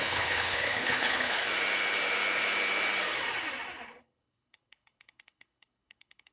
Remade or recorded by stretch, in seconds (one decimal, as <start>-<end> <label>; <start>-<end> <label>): 0.0-1.4 remade; 1.4-4.0 recorded; 4.0-6.3 remade